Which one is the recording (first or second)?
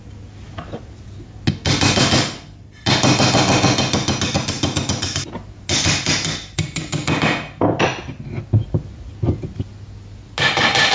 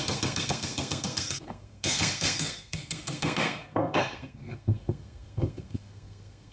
first